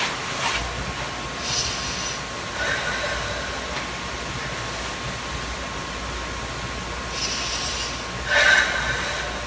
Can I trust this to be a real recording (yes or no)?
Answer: yes